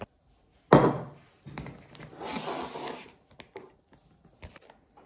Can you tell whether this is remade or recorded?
recorded